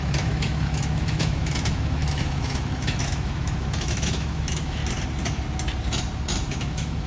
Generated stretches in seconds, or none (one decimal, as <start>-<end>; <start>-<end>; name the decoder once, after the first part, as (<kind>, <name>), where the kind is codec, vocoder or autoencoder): 0.0-4.8 (autoencoder, DAC-VAE); 6.5-7.1